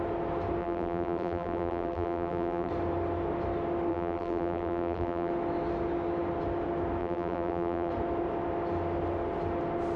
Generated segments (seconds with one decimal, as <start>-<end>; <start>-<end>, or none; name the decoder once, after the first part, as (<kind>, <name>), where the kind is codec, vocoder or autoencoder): 0.6-2.7 (vocoder, BigVGAN v2); 3.9-5.3; 7.0-7.9